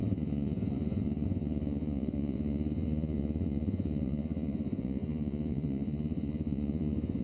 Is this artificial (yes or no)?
yes